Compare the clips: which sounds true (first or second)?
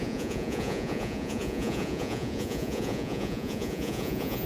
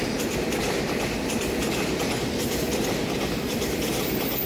second